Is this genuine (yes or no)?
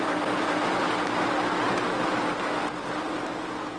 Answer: yes